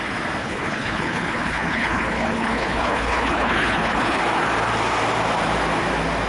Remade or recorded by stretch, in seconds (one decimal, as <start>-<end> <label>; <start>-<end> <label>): 0.0-0.4 recorded; 0.4-4.2 remade; 4.2-6.3 recorded